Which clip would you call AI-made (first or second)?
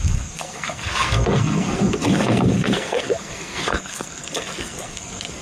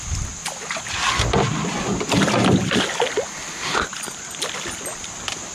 first